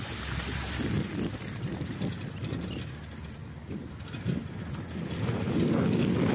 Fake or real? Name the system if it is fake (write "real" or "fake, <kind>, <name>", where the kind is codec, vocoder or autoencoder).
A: real